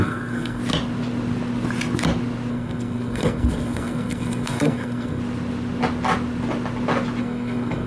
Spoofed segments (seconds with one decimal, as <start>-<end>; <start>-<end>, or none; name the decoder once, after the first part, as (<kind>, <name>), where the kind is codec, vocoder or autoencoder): 0.0-0.6 (codec, SNAC); 2.5-5.2; 7.2-7.9